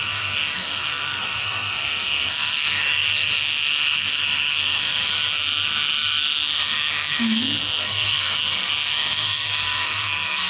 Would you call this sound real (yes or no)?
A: no